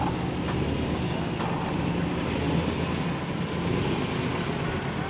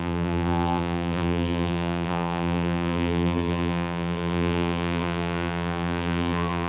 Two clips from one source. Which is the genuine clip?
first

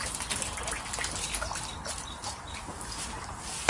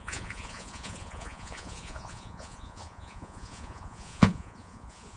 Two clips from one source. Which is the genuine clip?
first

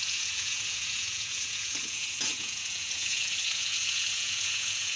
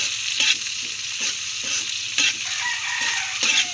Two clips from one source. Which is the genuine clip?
second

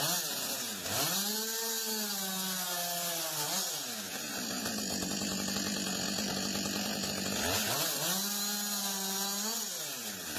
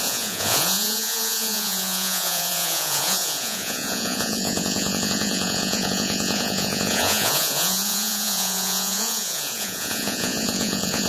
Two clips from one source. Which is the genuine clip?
first